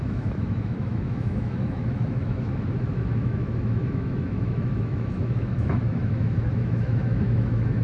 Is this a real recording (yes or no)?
no